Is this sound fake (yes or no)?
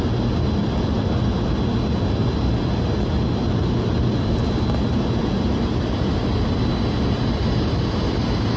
no